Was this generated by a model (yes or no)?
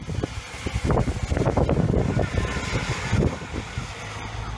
no